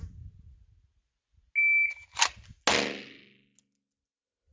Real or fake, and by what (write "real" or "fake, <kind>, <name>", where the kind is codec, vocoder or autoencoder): real